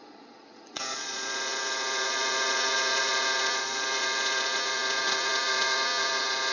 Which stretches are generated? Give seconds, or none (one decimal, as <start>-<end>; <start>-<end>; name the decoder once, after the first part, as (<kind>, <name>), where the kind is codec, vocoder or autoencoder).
0.0-6.5 (vocoder, Vocos)